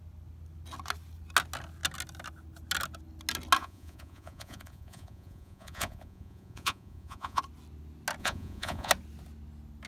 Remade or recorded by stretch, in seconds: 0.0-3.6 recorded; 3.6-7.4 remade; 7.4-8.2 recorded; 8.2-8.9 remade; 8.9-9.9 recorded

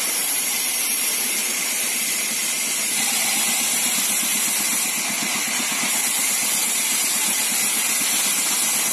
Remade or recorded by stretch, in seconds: 0.0-0.7 recorded; 0.7-3.4 remade; 3.4-5.3 recorded; 5.3-5.8 remade; 5.8-6.6 recorded; 6.6-7.4 remade; 7.4-8.9 recorded

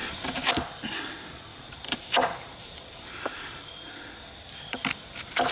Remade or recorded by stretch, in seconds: 0.0-0.5 remade; 0.5-1.5 recorded; 1.5-3.9 remade; 3.9-5.5 recorded

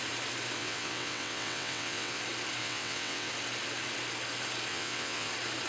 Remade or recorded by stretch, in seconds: 0.0-0.6 recorded; 0.6-2.2 remade; 2.2-2.6 recorded; 2.6-3.3 remade; 3.3-4.7 recorded; 4.7-5.3 remade; 5.3-5.7 recorded

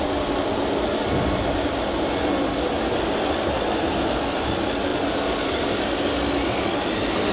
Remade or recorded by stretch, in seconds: 0.0-7.3 recorded

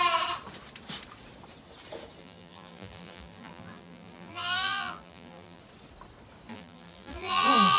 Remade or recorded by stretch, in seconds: 0.0-2.2 recorded; 2.2-5.6 remade; 5.6-6.5 recorded; 6.5-7.8 remade

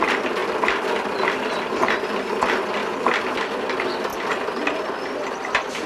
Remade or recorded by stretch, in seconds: 0.0-5.9 recorded

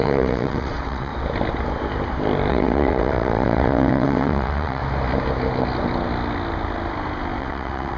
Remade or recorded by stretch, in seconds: 0.0-1.1 remade; 1.1-2.5 recorded; 2.5-4.8 remade; 4.8-7.4 recorded; 7.4-8.0 remade